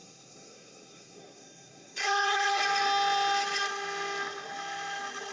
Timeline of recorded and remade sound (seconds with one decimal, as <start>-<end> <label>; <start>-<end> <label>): 0.0-2.6 remade; 2.6-5.3 recorded